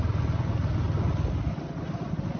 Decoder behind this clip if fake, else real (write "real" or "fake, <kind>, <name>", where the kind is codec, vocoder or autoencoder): real